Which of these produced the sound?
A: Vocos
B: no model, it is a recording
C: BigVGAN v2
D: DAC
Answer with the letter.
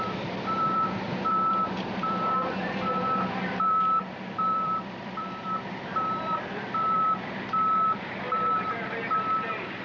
C